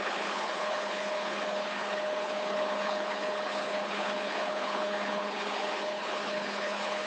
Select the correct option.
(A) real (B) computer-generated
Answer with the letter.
B